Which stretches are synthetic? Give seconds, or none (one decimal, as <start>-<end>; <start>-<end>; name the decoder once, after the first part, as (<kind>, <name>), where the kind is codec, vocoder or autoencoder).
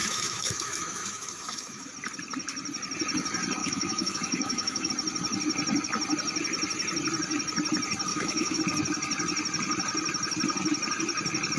0.0-1.9 (autoencoder, DAC-VAE); 3.6-4.9; 8.1-8.6